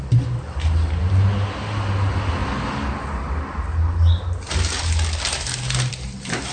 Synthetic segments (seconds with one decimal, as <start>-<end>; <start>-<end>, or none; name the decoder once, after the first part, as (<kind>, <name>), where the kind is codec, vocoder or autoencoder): none